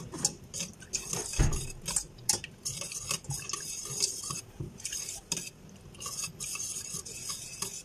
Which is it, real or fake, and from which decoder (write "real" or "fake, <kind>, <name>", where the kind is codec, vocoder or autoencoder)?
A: real